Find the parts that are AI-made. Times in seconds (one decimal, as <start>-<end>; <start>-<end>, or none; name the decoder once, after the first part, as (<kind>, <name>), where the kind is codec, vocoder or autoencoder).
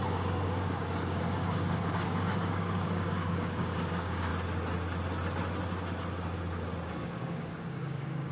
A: 0.0-4.3 (codec, DAC); 6.9-8.3